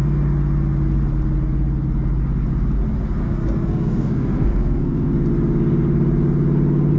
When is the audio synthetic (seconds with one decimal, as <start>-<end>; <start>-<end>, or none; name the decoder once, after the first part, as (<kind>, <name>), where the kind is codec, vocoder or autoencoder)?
3.2-5.1 (codec, SNAC)